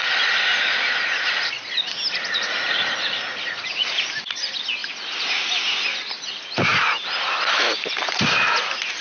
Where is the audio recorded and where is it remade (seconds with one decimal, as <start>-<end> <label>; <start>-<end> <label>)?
0.0-9.0 recorded